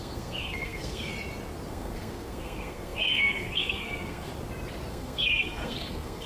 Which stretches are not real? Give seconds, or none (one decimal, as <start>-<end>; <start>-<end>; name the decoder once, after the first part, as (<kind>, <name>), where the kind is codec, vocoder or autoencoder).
0.0-1.1 (codec, SNAC); 1.7-4.3; 4.9-6.3

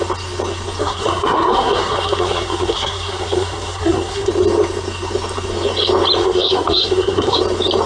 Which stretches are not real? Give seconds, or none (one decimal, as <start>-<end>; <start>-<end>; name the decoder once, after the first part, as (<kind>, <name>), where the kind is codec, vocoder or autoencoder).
0.8-4.3 (codec, SNAC); 6.2-7.4

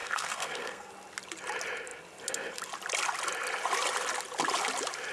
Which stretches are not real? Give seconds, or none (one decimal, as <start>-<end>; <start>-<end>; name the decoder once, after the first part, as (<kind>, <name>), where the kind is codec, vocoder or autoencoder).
0.0-0.9 (codec, SNAC)

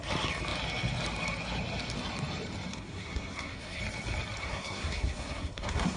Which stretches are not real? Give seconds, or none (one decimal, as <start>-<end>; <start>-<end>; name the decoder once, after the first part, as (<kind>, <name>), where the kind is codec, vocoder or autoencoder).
2.7-3.8 (codec, SNAC); 4.4-6.0

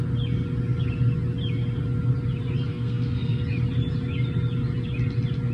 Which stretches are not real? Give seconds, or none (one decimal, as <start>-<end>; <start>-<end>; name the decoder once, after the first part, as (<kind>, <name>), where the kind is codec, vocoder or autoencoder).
2.7-3.4 (codec, SNAC)

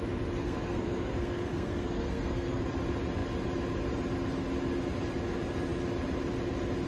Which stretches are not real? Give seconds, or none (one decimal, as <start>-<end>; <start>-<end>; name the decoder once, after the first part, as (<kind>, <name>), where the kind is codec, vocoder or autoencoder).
0.4-2.6 (codec, SNAC)

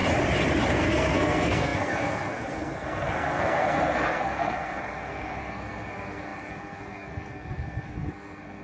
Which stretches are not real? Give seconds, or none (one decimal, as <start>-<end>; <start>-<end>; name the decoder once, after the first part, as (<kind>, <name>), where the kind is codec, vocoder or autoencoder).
0.7-8.6 (codec, SNAC)